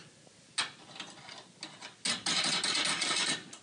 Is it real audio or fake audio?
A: real